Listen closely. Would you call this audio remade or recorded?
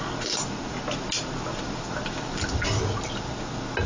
recorded